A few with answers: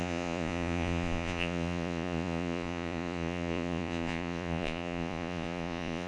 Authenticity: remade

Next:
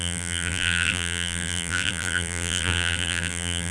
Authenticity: remade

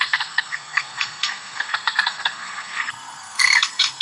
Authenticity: remade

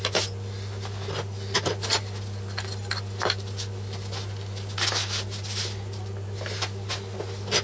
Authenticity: recorded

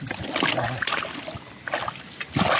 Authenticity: recorded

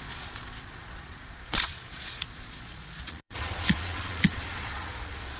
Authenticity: remade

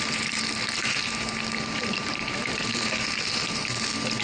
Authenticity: remade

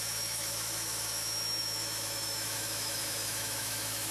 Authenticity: remade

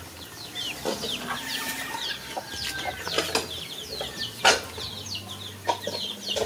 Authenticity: recorded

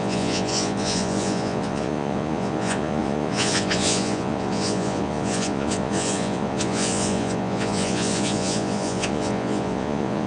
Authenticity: remade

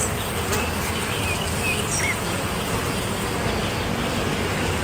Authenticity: recorded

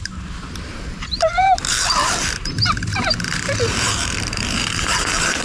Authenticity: remade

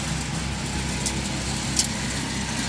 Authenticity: recorded